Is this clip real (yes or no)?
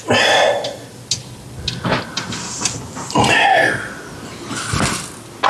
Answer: yes